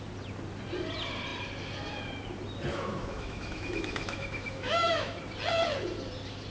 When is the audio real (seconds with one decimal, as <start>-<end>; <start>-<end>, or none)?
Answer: 0.0-2.7; 5.2-6.5